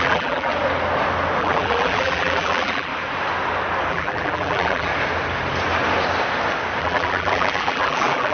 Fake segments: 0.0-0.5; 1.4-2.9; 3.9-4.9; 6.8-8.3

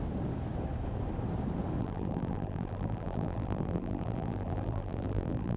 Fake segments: 1.8-5.6